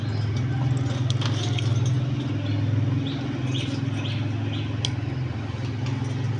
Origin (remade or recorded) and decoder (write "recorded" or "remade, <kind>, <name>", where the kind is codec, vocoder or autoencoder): recorded